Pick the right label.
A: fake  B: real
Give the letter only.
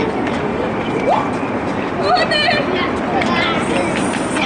B